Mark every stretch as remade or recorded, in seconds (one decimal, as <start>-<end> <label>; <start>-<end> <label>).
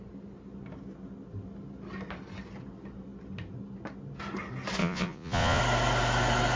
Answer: 0.0-4.8 recorded; 4.8-5.6 remade; 5.6-6.6 recorded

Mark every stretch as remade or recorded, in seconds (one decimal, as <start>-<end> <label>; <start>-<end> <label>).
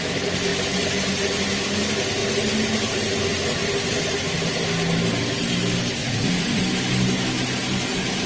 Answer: 0.0-6.0 recorded; 6.0-6.6 remade; 6.6-8.3 recorded